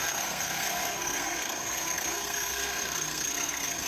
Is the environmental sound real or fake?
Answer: fake